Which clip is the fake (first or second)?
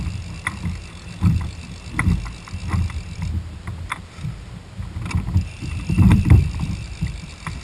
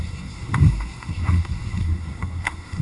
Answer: second